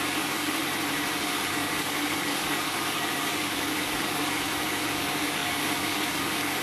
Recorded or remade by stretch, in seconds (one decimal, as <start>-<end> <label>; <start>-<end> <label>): 0.0-0.6 remade; 0.6-1.2 recorded; 1.2-6.6 remade